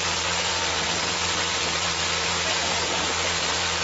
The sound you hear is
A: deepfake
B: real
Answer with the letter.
A